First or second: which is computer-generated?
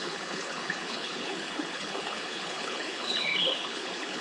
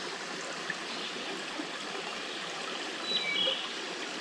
first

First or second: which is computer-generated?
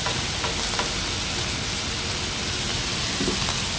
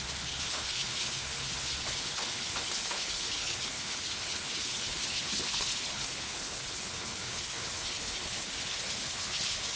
second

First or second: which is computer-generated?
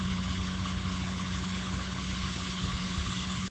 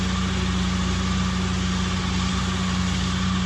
first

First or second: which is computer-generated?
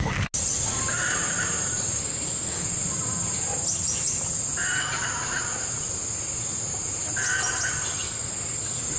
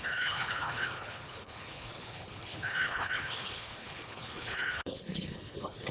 second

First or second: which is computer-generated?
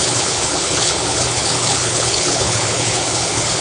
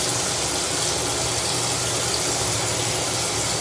first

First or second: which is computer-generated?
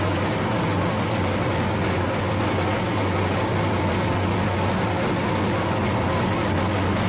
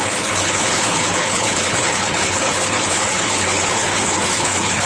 second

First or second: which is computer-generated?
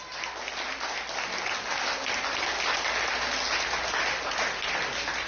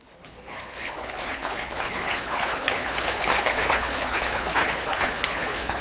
second